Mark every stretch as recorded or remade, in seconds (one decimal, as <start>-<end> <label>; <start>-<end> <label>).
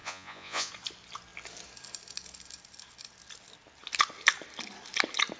0.0-0.7 remade; 0.7-5.4 recorded